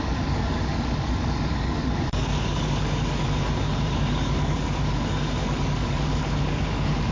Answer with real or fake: fake